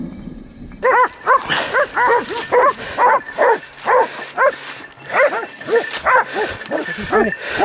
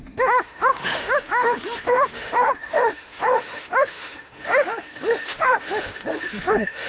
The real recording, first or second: first